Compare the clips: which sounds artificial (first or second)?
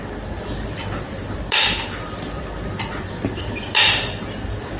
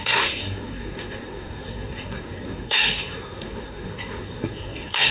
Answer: second